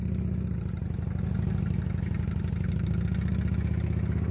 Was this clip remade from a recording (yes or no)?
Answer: no